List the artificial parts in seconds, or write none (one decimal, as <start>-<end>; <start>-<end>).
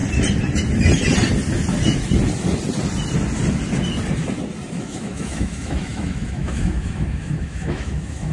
4.8-8.3